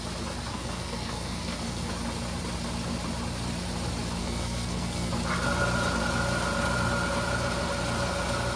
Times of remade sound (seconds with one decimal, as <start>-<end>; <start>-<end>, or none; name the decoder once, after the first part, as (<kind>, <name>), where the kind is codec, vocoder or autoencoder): 0.5-1.9 (codec, SNAC); 4.2-5.1